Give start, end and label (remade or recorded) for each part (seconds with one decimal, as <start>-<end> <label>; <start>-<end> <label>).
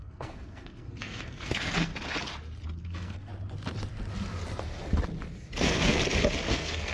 0.0-1.9 remade; 1.9-2.8 recorded; 2.8-3.3 remade; 3.3-5.6 recorded; 5.6-6.0 remade; 6.0-6.5 recorded; 6.5-6.9 remade